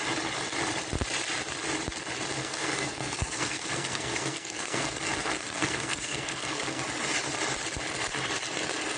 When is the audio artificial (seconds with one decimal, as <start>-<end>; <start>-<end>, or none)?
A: 2.4-6.8